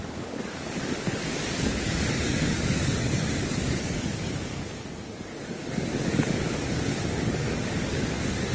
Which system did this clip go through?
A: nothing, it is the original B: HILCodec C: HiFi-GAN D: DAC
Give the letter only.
D